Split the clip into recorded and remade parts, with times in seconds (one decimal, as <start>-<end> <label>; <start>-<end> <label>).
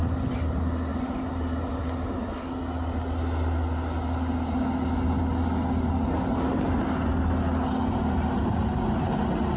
0.0-9.6 recorded